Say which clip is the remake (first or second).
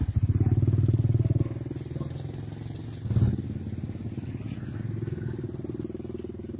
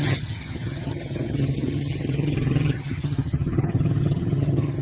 second